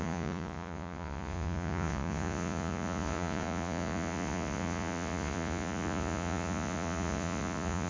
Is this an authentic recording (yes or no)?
no